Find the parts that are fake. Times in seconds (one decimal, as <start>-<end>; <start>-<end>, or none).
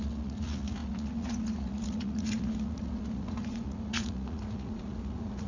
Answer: 0.0-5.5